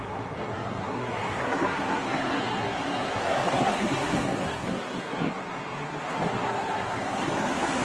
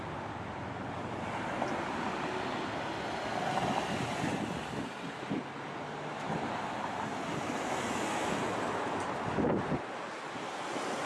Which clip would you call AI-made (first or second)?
first